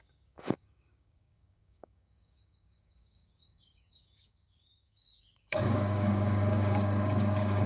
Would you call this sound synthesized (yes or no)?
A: yes